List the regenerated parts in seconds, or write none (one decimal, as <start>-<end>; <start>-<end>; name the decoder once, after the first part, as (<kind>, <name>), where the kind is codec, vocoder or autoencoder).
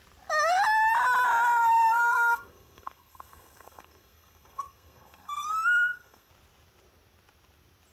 1.6-6.3 (codec, SNAC)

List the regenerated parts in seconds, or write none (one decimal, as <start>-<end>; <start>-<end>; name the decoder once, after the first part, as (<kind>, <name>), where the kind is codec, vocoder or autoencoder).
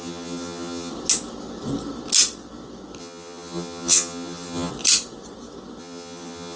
0.0-0.9 (vocoder, HiFi-GAN); 3.0-4.7; 5.8-6.6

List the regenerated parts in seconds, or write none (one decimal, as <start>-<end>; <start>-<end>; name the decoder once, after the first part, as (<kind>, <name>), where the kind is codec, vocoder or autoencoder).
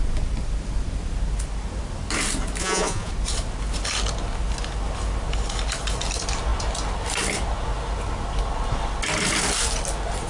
2.6-3.1 (vocoder, Vocos)